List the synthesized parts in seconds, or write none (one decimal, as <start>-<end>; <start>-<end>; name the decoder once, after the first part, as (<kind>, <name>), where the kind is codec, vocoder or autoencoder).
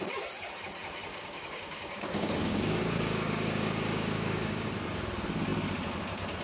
1.1-4.7 (codec, DAC)